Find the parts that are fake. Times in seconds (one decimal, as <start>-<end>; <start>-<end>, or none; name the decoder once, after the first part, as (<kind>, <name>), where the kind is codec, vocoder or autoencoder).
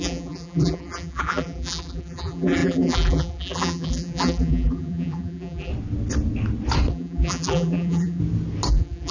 0.0-5.7 (vocoder, BigVGAN v2); 6.9-8.2; 8.7-9.1